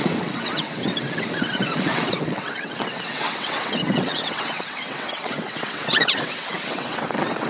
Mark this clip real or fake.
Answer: fake